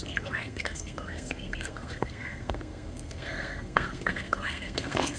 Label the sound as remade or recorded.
remade